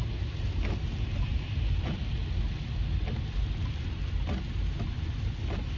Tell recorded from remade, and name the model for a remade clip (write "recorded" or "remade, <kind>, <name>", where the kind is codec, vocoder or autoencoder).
recorded